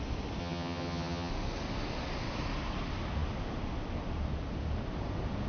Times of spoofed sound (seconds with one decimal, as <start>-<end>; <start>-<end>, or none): 0.4-1.3